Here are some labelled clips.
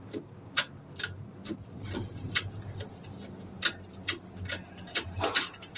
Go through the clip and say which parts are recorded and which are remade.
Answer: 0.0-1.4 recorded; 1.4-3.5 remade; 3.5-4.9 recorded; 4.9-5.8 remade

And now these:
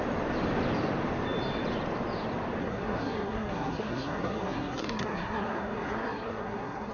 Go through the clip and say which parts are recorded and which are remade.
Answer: 0.0-2.6 recorded; 2.6-6.9 remade

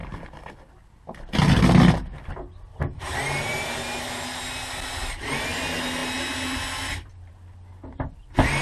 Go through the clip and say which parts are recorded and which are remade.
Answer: 0.0-8.6 recorded

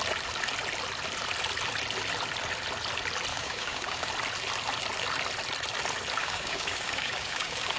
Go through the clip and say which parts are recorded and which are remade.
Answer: 0.0-3.3 recorded; 3.3-4.1 remade; 4.1-6.2 recorded; 6.2-7.8 remade

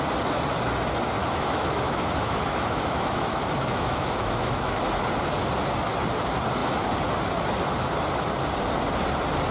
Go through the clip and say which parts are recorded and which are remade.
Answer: 0.0-1.2 recorded; 1.2-4.8 remade; 4.8-9.5 recorded